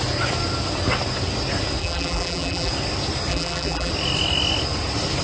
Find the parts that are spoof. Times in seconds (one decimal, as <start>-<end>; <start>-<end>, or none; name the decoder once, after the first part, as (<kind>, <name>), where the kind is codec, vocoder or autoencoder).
1.8-2.7 (vocoder, BigVGAN v2); 3.3-3.9